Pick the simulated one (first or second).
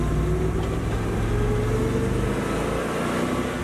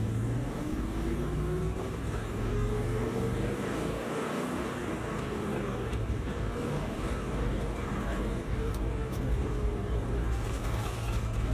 second